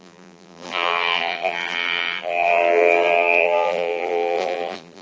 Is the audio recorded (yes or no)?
no